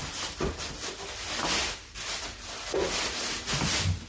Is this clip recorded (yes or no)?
yes